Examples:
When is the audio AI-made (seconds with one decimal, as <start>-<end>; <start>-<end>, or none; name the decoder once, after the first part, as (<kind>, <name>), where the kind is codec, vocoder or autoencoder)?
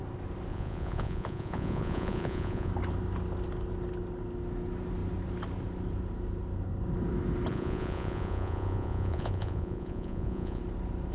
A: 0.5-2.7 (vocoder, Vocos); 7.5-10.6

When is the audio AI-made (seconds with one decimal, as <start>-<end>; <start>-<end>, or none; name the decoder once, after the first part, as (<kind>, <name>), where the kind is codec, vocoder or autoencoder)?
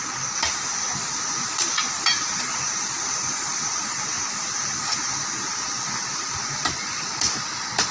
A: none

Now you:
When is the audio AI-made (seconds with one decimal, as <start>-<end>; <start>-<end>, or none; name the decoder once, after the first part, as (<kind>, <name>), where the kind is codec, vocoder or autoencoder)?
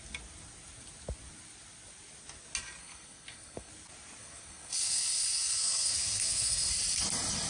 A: 2.8-3.7 (codec, SNAC); 4.2-6.7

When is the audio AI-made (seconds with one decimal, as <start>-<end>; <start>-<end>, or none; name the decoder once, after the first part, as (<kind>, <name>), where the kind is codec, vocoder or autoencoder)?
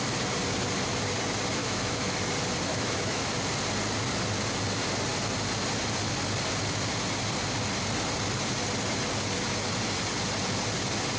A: 1.6-2.2 (autoencoder, DAC-VAE); 2.7-3.3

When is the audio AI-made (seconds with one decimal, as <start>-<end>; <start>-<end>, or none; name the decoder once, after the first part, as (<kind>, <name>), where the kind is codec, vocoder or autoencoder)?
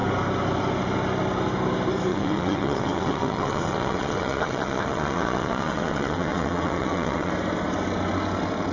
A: 2.1-7.3 (vocoder, WaveNeXt)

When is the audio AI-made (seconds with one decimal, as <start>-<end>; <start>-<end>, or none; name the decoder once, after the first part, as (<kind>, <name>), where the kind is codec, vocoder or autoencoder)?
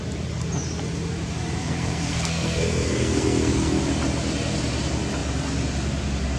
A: 1.6-3.8 (codec, SNAC)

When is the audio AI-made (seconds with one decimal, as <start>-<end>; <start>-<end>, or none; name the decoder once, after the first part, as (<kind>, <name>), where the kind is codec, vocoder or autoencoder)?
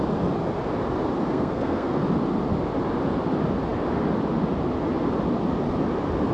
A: 1.3-2.0 (codec, SNAC)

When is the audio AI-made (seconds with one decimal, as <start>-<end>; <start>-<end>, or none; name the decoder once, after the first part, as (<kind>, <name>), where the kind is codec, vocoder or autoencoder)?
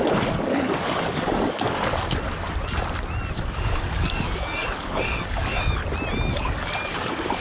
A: 0.0-1.9 (codec, DAC); 3.5-5.8; 6.3-7.4